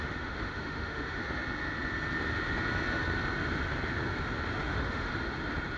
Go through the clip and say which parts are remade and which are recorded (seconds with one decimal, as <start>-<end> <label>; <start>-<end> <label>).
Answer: 0.0-1.2 remade; 1.2-4.6 recorded; 4.6-5.1 remade; 5.1-5.8 recorded